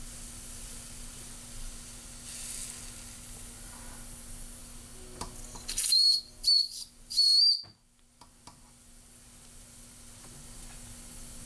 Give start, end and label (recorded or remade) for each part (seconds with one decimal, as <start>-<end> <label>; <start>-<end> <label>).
0.0-11.5 recorded